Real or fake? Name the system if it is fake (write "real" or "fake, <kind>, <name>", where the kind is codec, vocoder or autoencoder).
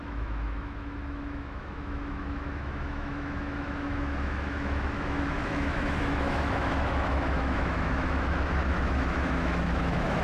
fake, autoencoder, DAC-VAE